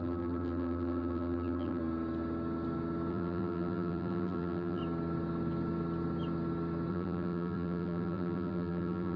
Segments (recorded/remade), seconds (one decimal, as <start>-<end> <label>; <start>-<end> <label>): 0.0-1.8 remade; 1.8-3.1 recorded; 3.1-4.8 remade; 4.8-6.9 recorded; 6.9-9.2 remade